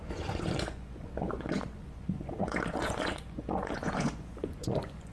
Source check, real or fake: fake